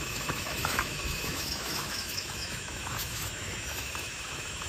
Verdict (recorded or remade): remade